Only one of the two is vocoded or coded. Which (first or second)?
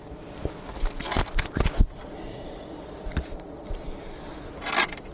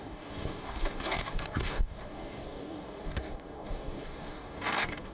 second